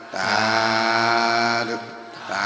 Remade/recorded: recorded